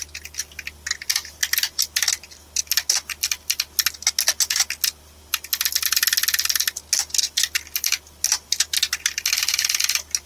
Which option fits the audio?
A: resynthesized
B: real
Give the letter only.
B